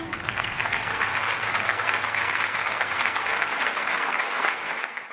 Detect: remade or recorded remade